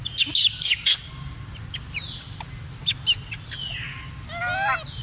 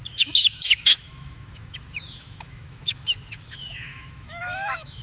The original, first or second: first